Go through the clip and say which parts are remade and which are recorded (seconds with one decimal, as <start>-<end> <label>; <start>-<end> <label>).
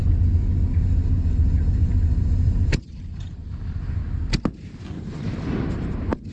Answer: 0.0-0.7 recorded; 0.7-4.0 remade; 4.0-5.0 recorded; 5.0-6.3 remade